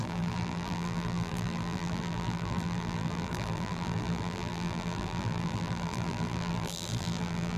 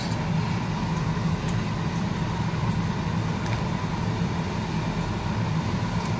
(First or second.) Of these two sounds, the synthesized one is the first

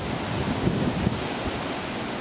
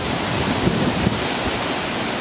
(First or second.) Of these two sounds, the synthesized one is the second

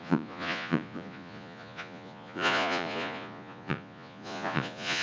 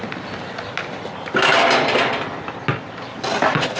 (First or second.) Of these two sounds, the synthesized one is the first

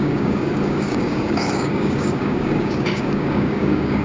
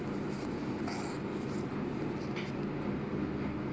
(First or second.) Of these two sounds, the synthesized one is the first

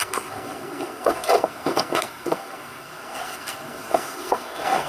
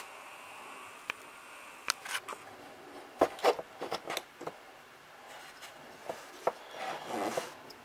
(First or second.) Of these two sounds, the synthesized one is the first